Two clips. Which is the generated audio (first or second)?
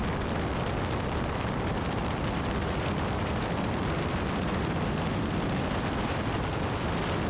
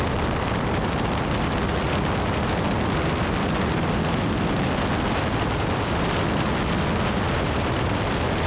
first